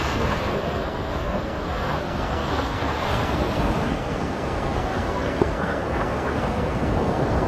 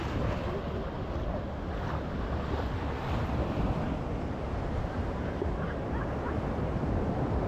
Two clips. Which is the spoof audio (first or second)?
first